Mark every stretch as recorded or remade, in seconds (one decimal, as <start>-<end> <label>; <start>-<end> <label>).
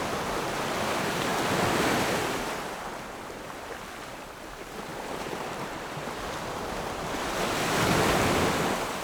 0.0-4.9 recorded; 4.9-7.1 remade; 7.1-9.0 recorded